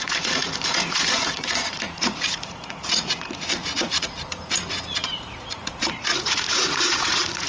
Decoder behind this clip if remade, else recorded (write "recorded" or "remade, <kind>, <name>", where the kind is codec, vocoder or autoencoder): remade, vocoder, Vocos